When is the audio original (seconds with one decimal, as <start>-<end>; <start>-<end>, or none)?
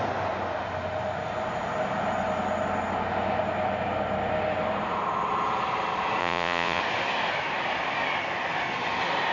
0.0-6.2; 6.8-9.3